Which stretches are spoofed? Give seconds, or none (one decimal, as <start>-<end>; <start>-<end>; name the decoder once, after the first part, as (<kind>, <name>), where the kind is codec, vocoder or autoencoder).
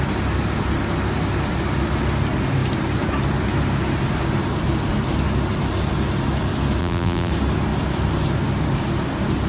6.8-7.3 (vocoder, BigVGAN v2)